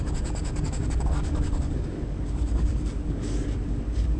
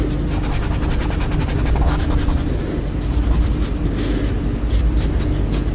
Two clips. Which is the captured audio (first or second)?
second